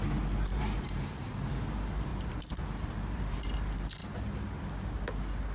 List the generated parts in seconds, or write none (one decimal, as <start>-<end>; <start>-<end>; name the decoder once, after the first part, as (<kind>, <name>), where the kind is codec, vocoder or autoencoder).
0.5-1.5 (vocoder, BigVGAN v2); 2.1-3.4; 4.0-4.6